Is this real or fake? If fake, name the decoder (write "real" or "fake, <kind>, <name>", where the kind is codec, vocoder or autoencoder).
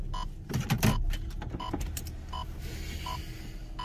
real